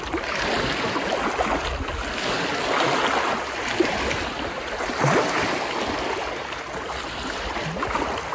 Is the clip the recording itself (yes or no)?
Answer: yes